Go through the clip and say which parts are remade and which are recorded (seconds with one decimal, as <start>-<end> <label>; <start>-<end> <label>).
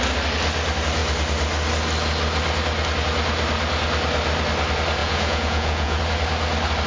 0.0-5.0 recorded; 5.0-6.0 remade; 6.0-6.9 recorded